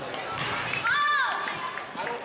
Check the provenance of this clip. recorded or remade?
recorded